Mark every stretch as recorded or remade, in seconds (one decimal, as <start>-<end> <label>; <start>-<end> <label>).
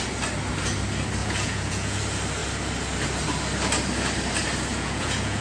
0.0-1.2 recorded; 1.2-2.0 remade; 2.0-4.7 recorded; 4.7-5.4 remade